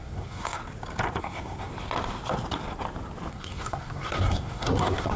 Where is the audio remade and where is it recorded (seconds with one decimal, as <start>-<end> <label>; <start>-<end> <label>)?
0.0-0.6 remade; 0.6-1.2 recorded; 1.2-1.7 remade; 1.7-3.3 recorded; 3.3-5.2 remade